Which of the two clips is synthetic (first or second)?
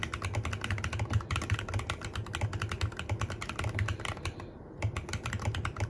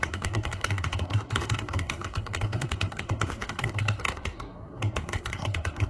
second